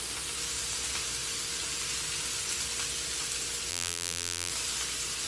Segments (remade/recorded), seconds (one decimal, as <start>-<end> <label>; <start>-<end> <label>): 0.0-3.7 recorded; 3.7-4.5 remade; 4.5-5.3 recorded